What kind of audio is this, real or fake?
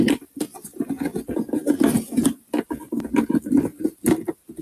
real